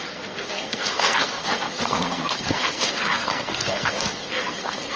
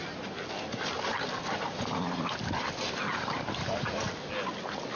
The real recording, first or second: second